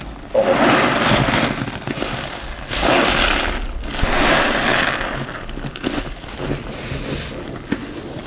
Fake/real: real